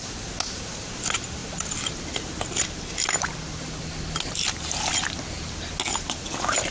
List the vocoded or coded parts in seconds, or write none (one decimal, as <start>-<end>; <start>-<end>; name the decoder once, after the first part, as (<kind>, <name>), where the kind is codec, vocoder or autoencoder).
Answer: none